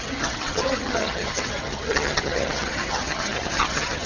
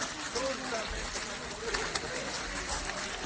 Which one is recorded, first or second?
second